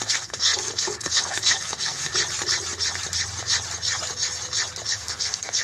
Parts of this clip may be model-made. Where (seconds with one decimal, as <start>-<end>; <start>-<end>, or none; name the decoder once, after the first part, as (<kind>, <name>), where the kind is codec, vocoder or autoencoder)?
0.0-2.1 (codec, SNAC); 4.9-5.6